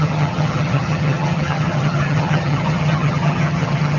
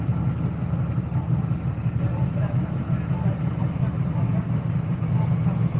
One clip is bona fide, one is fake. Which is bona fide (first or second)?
second